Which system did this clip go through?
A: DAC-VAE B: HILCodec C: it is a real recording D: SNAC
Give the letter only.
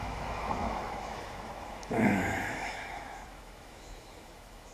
A